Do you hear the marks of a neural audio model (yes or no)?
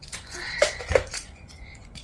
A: yes